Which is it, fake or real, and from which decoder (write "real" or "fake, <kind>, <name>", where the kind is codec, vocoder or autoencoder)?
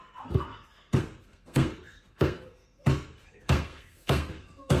fake, codec, SNAC